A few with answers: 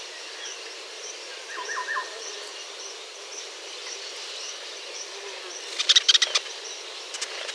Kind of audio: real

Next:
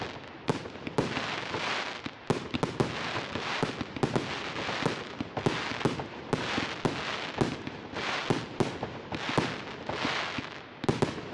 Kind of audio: real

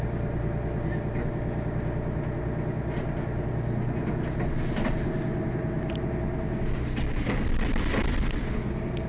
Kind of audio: real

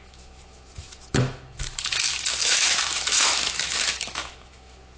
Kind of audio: fake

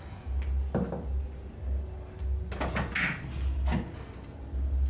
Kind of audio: real